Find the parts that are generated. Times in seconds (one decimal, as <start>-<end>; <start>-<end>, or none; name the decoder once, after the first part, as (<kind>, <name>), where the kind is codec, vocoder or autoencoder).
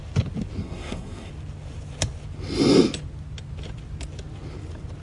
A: 0.6-1.3 (codec, SNAC)